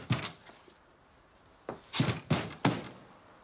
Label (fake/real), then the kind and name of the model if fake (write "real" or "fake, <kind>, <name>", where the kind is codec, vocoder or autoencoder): real